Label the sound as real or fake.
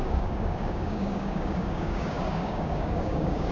fake